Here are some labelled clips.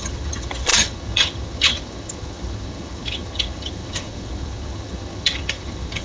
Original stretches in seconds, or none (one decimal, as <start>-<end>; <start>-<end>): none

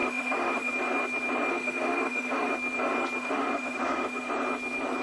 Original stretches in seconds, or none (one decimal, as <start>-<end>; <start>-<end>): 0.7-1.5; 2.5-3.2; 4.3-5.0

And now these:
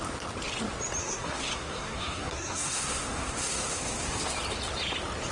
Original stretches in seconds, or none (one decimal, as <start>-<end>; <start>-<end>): 0.0-1.0; 4.2-5.3